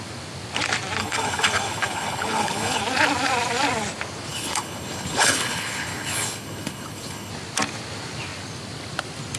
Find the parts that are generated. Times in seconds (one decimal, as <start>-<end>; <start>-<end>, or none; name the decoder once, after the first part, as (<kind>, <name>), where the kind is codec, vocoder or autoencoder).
1.0-2.8 (codec, HILCodec); 4.3-7.3

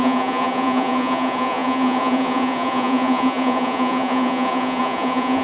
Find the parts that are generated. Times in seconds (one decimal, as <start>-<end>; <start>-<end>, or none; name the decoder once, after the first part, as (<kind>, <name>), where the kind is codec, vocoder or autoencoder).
0.0-5.4 (vocoder, Vocos)